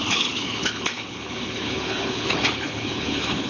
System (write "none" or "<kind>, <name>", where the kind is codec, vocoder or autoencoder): codec, HILCodec